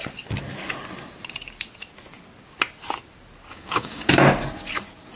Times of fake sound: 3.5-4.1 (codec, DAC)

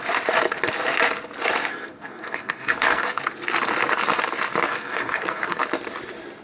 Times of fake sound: 1.7-3.2 (codec, SNAC); 4.7-5.6

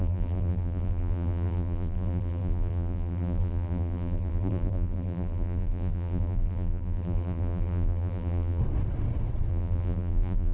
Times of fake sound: 0.0-8.6 (vocoder, BigVGAN v2); 9.5-10.5